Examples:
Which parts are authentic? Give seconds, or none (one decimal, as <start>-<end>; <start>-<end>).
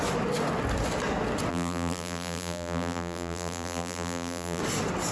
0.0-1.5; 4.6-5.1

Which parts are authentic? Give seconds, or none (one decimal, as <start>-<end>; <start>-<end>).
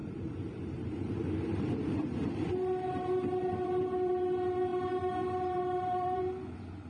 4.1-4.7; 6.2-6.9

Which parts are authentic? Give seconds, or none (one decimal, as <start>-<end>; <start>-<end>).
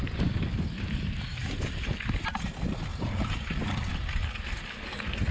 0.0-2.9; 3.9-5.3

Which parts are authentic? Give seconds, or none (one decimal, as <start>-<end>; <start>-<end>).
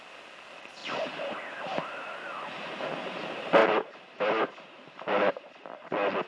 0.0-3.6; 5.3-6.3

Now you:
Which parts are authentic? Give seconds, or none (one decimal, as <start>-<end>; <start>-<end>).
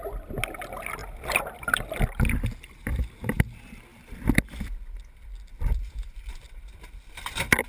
0.0-1.0; 1.8-3.9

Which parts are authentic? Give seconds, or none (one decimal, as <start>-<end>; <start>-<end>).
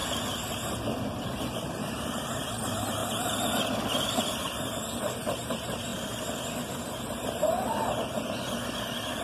0.0-1.6; 3.0-4.3; 5.9-9.2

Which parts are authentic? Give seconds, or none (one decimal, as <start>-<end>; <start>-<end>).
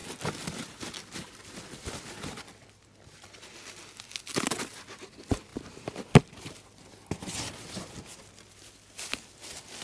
3.4-5.5; 8.7-9.8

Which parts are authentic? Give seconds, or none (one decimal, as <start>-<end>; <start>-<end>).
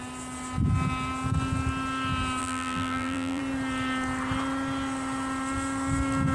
0.0-2.4; 3.4-6.3